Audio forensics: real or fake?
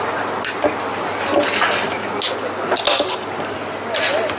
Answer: real